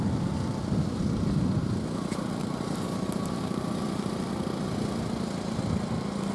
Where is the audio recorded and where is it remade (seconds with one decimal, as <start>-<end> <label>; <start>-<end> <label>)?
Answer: 0.0-1.6 recorded; 1.6-4.3 remade; 4.3-6.3 recorded